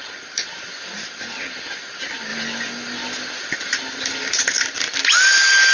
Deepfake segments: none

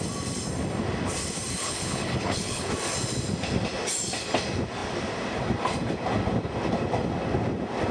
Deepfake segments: 1.6-2.7

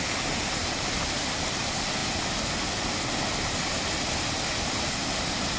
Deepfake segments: none

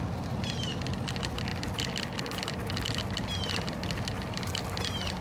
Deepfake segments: none

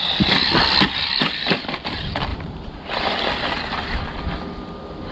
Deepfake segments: 2.3-3.0